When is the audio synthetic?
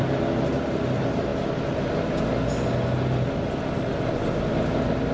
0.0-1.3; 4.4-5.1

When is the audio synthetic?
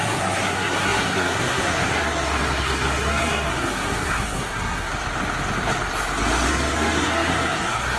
0.0-4.9; 6.5-8.0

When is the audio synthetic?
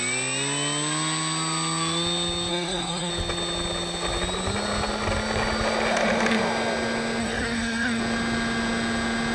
2.5-3.1; 7.2-8.0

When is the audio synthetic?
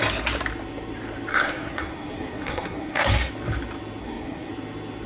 1.3-3.3; 4.0-4.5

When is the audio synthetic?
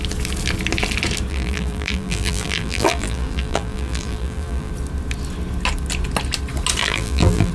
1.3-4.7; 6.8-7.5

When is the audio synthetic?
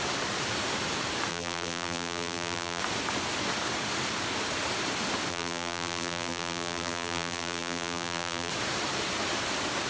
1.3-2.8; 5.3-8.5